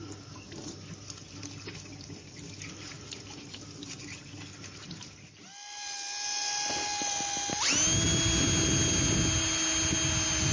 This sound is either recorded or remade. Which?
recorded